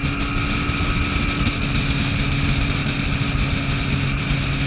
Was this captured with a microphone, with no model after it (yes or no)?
yes